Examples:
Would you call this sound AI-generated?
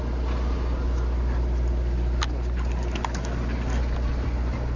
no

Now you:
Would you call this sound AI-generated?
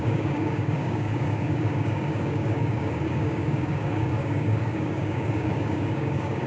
yes